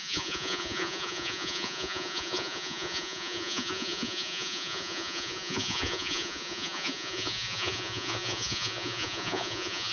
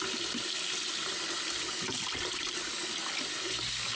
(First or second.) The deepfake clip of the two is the first